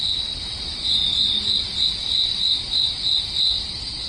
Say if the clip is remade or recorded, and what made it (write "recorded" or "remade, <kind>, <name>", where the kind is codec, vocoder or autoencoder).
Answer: recorded